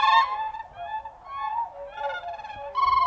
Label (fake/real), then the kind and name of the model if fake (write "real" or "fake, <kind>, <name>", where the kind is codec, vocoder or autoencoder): real